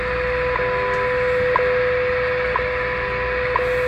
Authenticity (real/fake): real